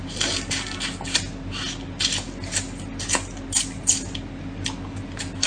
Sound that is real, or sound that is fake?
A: real